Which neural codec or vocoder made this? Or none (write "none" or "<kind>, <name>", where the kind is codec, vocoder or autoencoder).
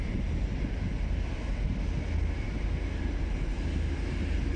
none